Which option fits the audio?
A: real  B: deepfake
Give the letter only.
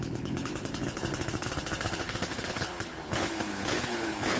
B